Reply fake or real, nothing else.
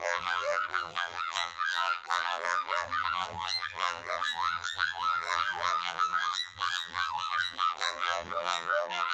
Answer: fake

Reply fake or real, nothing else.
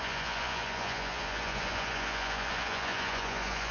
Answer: fake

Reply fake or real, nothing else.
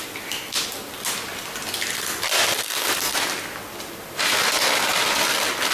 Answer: real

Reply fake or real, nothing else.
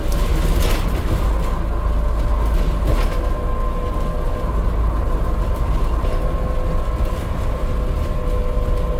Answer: real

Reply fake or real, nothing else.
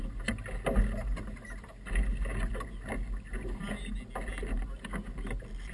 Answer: real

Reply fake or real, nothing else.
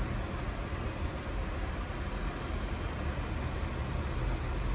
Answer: real